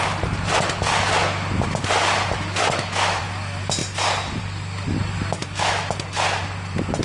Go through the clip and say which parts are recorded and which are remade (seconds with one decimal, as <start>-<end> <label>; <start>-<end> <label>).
0.0-2.6 recorded; 2.6-3.2 remade; 3.2-5.4 recorded; 5.4-5.9 remade; 5.9-7.0 recorded